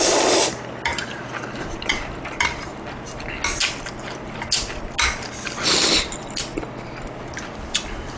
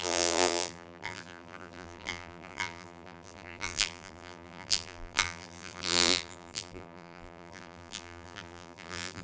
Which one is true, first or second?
first